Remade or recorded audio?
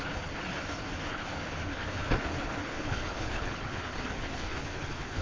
remade